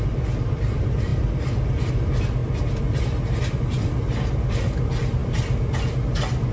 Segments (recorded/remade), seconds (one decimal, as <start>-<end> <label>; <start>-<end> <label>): 0.0-6.5 recorded